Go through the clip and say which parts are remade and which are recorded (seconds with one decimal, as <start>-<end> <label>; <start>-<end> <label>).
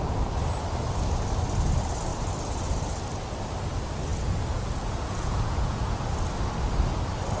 0.0-4.1 recorded; 4.1-6.0 remade; 6.0-7.4 recorded